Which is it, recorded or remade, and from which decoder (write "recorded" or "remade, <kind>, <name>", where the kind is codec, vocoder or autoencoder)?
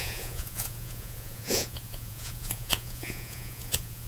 remade, vocoder, Vocos